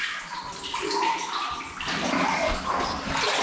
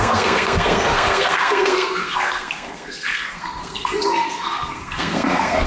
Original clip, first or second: first